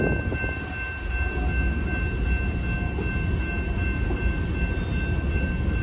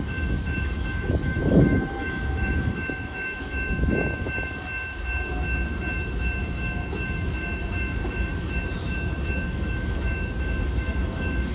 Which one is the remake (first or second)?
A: second